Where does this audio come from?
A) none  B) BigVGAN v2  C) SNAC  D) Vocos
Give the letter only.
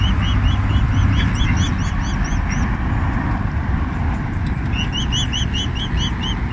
A